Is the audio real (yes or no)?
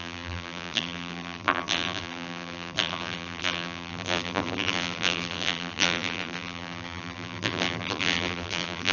no